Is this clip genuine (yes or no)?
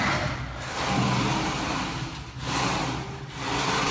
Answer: yes